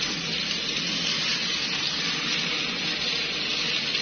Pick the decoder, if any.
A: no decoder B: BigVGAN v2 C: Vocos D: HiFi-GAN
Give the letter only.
A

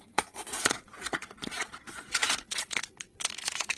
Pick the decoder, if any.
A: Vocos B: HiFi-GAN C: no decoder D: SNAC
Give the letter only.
A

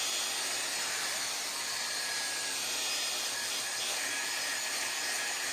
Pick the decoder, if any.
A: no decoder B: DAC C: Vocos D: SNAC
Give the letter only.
A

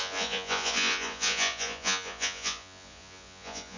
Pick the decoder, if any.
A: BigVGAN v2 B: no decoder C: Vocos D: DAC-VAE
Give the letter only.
C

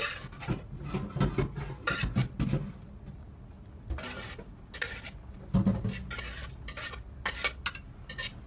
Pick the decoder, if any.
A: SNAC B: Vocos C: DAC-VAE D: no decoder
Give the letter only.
D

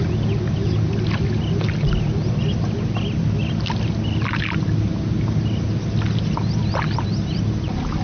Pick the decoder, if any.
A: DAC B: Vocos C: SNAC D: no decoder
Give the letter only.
D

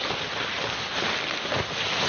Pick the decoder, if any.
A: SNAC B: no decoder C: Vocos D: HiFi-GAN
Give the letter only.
B